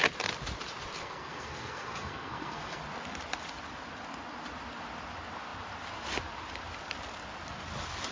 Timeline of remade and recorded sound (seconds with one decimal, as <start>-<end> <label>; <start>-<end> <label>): 0.0-1.0 recorded; 1.0-2.8 remade; 2.8-8.1 recorded